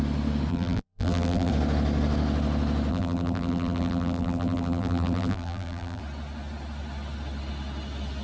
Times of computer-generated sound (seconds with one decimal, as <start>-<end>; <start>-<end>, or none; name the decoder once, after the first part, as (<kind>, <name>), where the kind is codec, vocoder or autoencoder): 0.5-1.5 (vocoder, BigVGAN v2); 2.9-6.0